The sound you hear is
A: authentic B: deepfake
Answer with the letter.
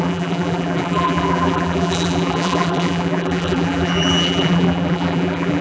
B